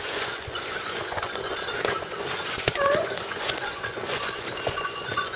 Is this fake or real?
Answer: fake